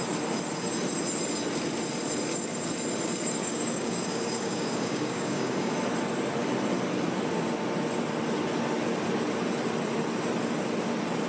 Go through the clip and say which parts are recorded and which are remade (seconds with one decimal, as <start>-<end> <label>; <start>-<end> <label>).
0.0-3.4 recorded; 3.4-5.7 remade; 5.7-11.3 recorded